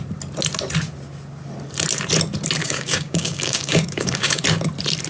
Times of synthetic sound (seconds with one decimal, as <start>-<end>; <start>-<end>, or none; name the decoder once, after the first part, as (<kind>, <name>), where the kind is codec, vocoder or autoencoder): 2.6-4.4 (codec, DAC)